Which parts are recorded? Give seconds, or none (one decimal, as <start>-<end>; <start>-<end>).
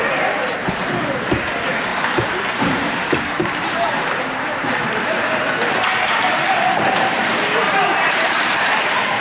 1.9-2.9